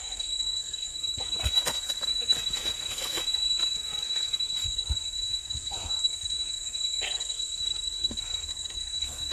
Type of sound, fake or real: fake